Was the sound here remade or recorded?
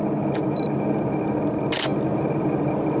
recorded